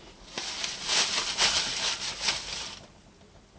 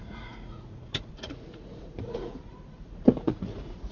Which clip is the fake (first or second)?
second